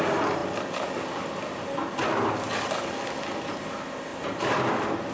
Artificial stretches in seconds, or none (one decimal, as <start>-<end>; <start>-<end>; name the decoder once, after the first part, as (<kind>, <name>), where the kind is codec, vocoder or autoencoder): 4.1-5.1 (vocoder, BigVGAN v2)